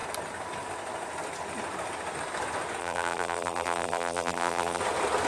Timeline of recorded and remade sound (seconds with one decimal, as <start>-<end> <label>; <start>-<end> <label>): 0.0-2.8 recorded; 2.8-4.8 remade; 4.8-5.3 recorded